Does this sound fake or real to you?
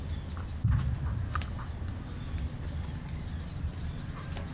real